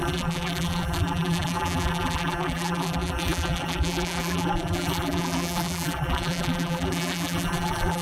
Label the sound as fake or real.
fake